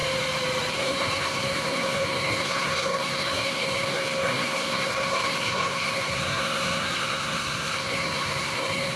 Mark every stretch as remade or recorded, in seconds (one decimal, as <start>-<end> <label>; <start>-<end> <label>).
0.0-0.7 recorded; 0.7-9.0 remade

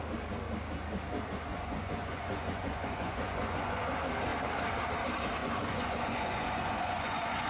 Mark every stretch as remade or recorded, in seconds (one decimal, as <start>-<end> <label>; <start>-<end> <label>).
0.0-1.5 recorded; 1.5-3.8 remade; 3.8-5.4 recorded; 5.4-7.5 remade